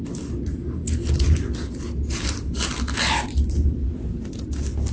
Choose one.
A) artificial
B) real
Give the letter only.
B